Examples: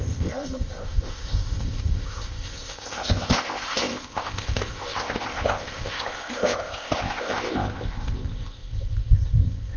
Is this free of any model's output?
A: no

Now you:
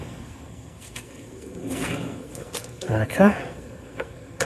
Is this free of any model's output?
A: no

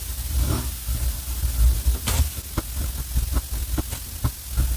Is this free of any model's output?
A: yes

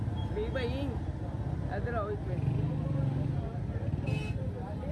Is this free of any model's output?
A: yes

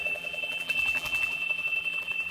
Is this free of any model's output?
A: no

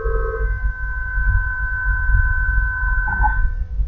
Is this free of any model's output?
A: yes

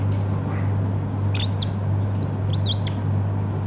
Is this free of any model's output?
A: yes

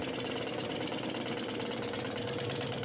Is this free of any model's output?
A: no